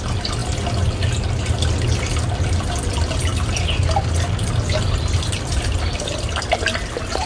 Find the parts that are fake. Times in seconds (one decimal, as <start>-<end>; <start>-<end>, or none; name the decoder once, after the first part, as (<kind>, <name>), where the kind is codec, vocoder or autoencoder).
none